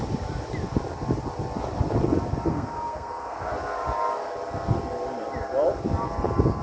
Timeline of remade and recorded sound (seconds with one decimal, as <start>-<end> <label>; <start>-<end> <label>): 0.0-2.5 recorded; 2.5-3.5 remade; 3.5-6.6 recorded